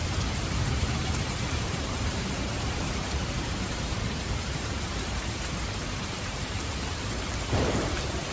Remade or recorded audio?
remade